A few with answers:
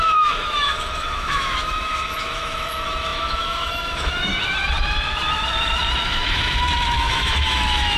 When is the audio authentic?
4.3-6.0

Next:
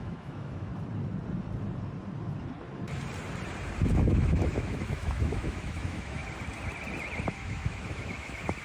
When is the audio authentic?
0.7-3.9; 6.2-7.3

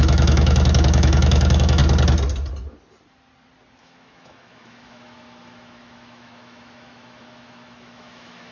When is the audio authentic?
1.8-3.8

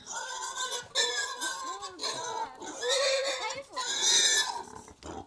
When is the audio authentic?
0.0-5.3

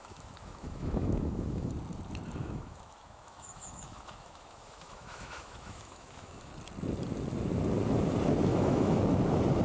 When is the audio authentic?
1.7-2.4; 6.5-8.5; 9.0-9.6

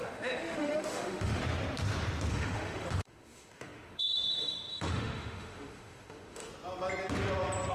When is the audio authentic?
1.4-2.3; 6.5-7.7

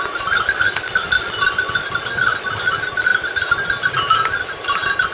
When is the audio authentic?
0.0-5.1

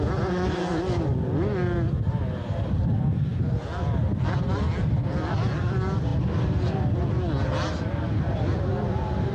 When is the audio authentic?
0.0-9.3